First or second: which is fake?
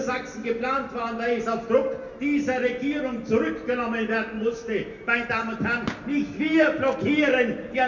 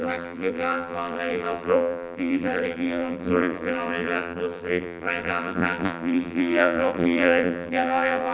second